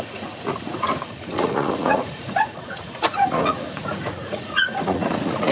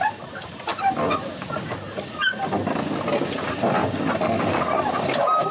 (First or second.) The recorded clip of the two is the second